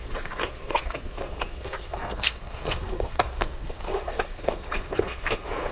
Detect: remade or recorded remade